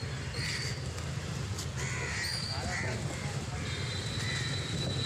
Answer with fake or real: real